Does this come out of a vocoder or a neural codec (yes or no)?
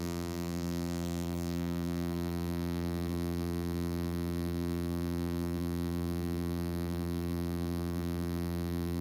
yes